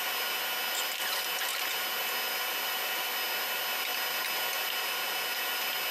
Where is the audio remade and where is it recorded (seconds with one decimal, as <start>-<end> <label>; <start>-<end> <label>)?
0.0-5.9 recorded